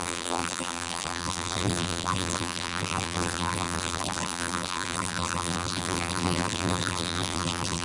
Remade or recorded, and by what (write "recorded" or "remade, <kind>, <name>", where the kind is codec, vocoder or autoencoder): remade, vocoder, BigVGAN v2